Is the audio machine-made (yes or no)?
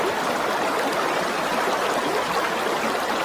no